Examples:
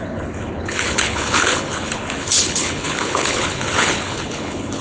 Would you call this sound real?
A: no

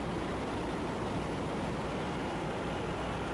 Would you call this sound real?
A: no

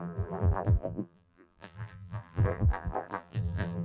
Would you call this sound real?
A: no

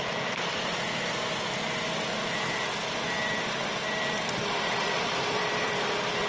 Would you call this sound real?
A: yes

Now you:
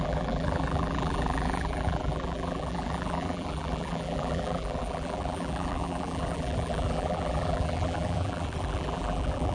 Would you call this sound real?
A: no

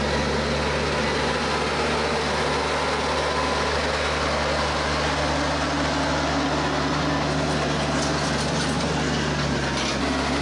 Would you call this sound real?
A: yes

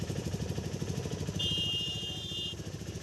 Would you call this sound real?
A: no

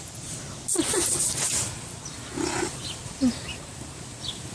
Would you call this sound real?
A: yes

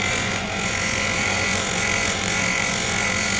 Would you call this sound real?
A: no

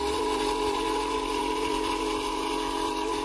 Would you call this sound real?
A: no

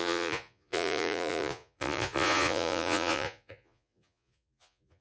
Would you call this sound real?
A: no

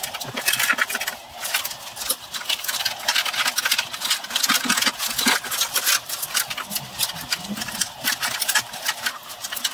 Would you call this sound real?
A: yes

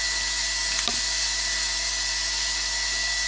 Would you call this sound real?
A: yes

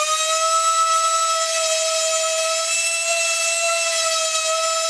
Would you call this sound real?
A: yes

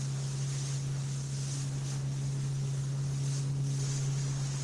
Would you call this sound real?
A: yes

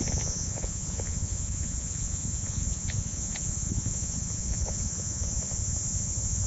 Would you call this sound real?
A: no